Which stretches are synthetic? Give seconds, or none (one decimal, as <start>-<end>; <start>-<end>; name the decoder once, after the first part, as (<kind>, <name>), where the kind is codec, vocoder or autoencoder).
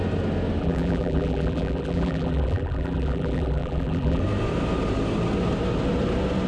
0.6-4.2 (vocoder, BigVGAN v2)